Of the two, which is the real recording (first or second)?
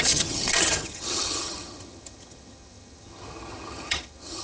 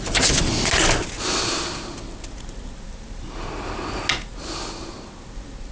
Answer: second